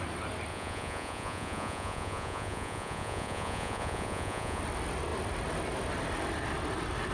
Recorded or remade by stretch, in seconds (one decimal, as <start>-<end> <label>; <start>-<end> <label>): 0.0-0.5 recorded; 0.5-4.6 remade; 4.6-7.1 recorded